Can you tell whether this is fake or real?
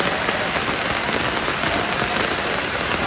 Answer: real